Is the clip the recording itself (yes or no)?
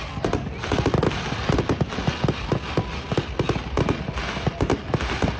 yes